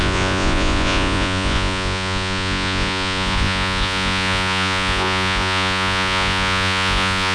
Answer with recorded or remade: remade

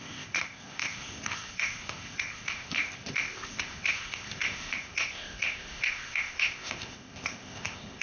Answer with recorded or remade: remade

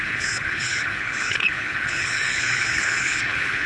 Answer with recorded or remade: remade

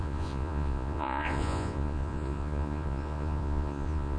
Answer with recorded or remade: remade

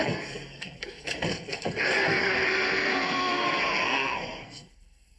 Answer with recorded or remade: remade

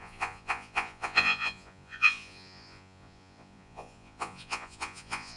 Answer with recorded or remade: remade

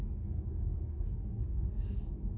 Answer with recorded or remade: remade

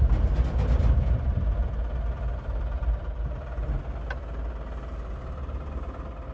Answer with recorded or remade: recorded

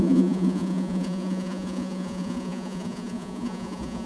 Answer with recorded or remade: remade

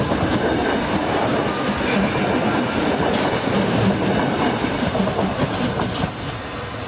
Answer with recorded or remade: recorded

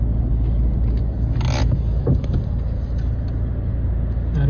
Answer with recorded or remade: recorded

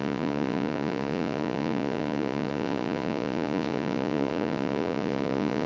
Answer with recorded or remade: remade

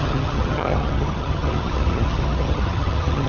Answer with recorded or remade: remade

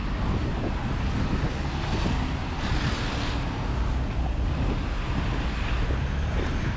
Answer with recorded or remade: recorded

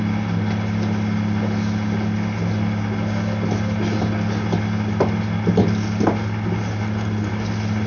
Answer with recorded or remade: recorded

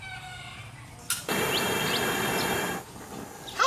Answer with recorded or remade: recorded